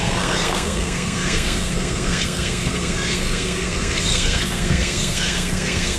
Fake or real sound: fake